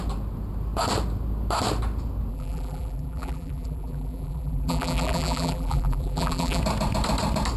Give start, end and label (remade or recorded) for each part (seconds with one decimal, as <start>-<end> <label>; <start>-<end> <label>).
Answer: 0.0-2.3 recorded; 2.3-6.6 remade; 6.6-7.6 recorded